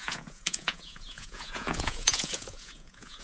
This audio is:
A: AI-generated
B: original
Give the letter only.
A